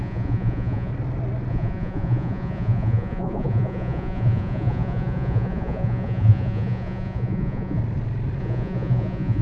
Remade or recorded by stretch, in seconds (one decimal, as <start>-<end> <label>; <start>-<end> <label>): 0.0-0.9 remade; 0.9-1.5 recorded; 1.5-7.8 remade; 7.8-8.4 recorded; 8.4-9.4 remade